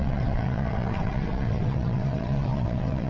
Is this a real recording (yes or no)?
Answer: no